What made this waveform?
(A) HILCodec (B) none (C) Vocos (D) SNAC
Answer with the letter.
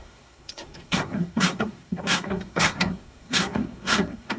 D